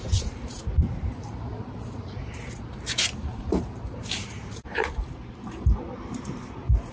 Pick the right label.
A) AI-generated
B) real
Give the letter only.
A